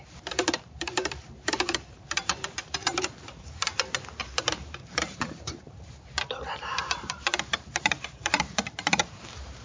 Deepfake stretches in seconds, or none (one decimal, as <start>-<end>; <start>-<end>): 0.0-3.7; 4.4-9.6